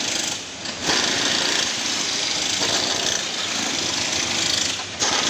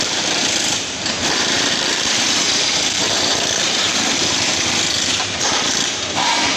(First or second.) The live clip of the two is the first